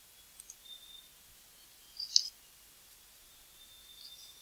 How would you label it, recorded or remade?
recorded